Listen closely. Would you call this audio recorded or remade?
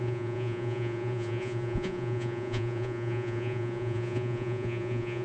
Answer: remade